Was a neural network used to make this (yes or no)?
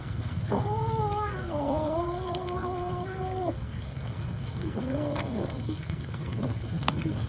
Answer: yes